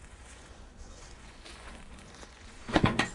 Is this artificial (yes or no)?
yes